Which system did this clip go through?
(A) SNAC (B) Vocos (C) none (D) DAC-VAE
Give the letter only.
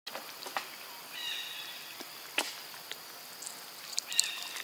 C